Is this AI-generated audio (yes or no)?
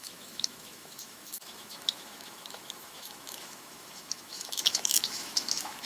yes